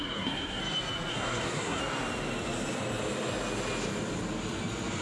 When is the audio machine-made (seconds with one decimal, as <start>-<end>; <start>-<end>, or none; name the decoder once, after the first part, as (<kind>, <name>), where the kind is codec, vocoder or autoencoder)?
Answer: 0.0-0.6 (codec, SNAC); 1.1-1.8